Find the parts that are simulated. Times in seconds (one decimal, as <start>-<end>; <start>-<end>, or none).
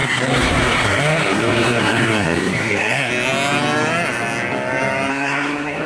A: 0.0-3.1; 5.1-5.9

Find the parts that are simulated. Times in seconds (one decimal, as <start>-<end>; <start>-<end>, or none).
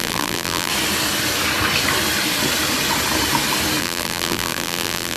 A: 0.0-0.7; 3.8-5.2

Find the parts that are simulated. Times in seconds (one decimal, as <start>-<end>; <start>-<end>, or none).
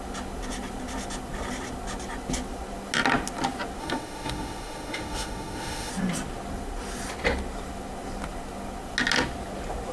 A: 3.8-5.9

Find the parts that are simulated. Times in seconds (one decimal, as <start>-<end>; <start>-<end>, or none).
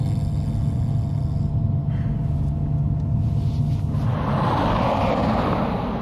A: none